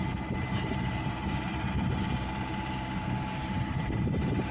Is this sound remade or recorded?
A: remade